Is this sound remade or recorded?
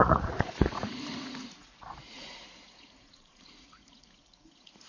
remade